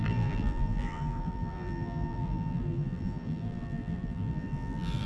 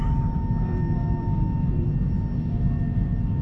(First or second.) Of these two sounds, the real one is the second